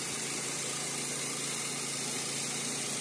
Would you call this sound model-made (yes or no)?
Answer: no